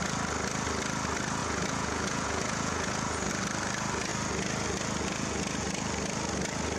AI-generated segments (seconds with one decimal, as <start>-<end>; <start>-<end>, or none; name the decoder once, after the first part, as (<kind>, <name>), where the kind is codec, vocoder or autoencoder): 1.4-3.3 (vocoder, Vocos)